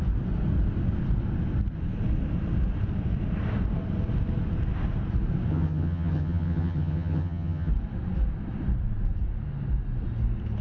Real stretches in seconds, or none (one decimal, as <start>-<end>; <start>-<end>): 0.0-5.5; 7.7-10.6